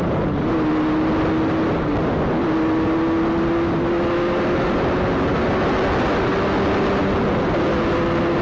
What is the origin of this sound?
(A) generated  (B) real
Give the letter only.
B